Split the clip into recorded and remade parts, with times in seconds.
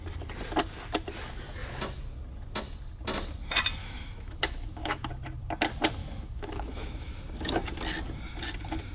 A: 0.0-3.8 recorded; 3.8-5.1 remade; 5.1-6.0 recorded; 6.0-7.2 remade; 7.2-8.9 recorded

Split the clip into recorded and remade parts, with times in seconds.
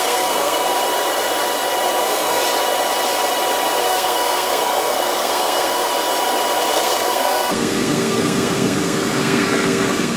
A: 0.0-0.7 remade; 0.7-2.0 recorded; 2.0-2.4 remade; 2.4-3.8 recorded; 3.8-5.9 remade; 5.9-6.7 recorded; 6.7-10.2 remade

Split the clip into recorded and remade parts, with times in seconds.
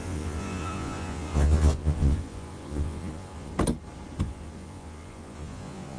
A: 0.0-3.5 remade; 3.5-4.2 recorded; 4.2-6.0 remade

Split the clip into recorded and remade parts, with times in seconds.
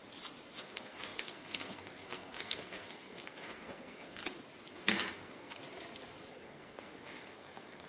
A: 0.0-0.6 recorded; 0.6-4.2 remade; 4.2-4.7 recorded; 4.7-5.6 remade; 5.6-6.3 recorded; 6.3-7.9 remade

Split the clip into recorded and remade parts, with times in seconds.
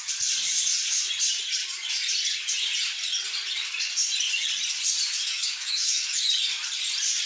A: 0.0-5.1 recorded; 5.1-6.3 remade; 6.3-7.3 recorded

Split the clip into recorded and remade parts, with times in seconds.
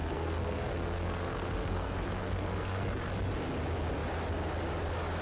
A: 0.0-3.1 remade; 3.1-5.2 recorded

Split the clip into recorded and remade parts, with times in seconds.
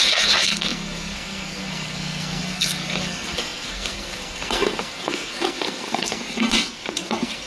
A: 0.0-7.5 remade